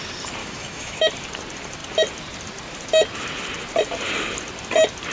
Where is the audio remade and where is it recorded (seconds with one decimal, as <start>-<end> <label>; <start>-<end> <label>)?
0.0-0.4 recorded; 0.4-1.1 remade; 1.1-5.1 recorded